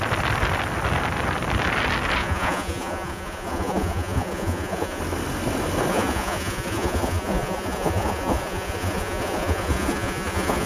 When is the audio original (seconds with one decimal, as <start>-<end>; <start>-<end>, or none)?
0.0-2.2; 5.0-5.9